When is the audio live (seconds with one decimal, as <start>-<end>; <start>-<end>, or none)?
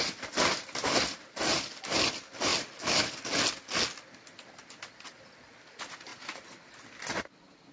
0.0-7.7